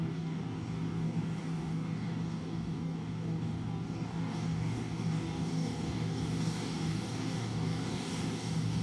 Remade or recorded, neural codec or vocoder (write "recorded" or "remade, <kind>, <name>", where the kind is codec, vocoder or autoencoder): remade, codec, DAC